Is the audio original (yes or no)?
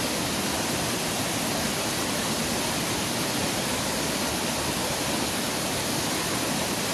yes